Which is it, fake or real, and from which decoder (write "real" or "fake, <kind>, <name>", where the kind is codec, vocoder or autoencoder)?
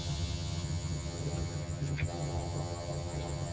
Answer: fake, vocoder, HiFi-GAN